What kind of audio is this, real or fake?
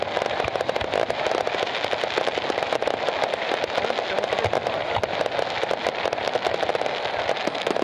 real